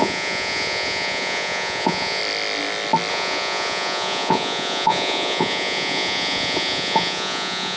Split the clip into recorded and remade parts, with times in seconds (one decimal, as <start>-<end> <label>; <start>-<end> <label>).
0.0-2.2 remade; 2.2-3.1 recorded; 3.1-7.8 remade